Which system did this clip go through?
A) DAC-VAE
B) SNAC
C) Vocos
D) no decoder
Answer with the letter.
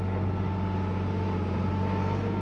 D